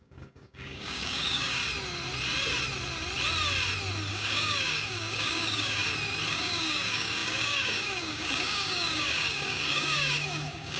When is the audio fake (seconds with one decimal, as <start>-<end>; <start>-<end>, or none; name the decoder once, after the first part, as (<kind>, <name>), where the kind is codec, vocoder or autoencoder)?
0.0-1.6 (codec, DAC); 4.1-5.8; 6.3-10.8